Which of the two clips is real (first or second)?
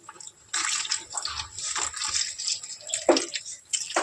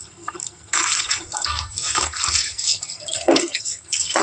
first